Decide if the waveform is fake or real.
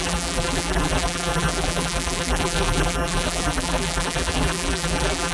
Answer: fake